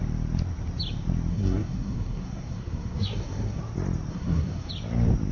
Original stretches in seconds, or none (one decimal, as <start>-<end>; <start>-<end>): 0.0-1.3; 3.6-4.1; 4.7-5.3